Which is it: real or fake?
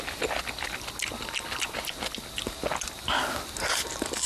real